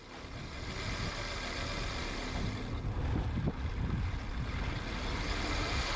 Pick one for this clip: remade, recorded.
recorded